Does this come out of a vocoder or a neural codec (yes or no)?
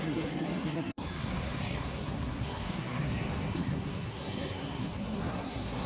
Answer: yes